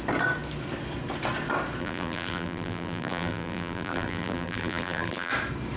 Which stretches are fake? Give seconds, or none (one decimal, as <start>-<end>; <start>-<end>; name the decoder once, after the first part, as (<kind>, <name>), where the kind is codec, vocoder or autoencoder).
1.8-5.3 (vocoder, BigVGAN v2)